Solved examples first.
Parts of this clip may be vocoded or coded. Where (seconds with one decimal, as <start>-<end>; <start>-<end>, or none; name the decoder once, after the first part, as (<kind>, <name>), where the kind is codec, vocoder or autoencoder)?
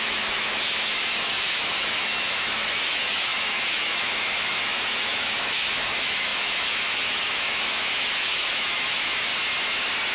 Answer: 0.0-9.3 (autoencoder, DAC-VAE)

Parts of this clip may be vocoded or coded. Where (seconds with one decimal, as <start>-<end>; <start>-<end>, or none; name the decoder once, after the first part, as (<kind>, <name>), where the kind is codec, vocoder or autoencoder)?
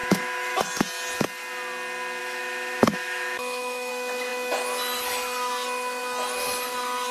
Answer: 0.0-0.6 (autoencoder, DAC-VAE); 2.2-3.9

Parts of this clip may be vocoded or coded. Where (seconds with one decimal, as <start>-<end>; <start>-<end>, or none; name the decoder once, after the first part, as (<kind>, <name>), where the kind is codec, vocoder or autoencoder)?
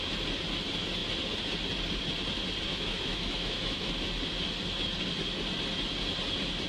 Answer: 2.7-3.9 (autoencoder, DAC-VAE)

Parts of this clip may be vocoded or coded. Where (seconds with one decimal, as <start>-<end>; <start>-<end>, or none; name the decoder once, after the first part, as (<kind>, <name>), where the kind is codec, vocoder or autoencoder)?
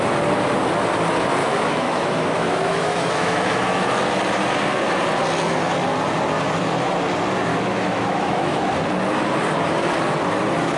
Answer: 1.4-3.8 (autoencoder, DAC-VAE); 7.5-8.6